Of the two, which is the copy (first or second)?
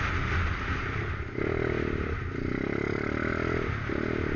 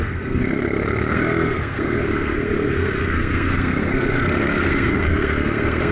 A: second